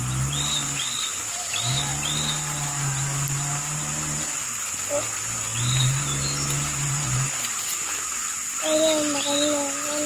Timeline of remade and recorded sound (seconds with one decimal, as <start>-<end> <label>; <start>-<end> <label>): 0.0-10.1 recorded